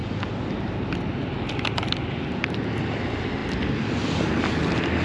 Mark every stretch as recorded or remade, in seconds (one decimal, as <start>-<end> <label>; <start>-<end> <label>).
0.0-5.0 recorded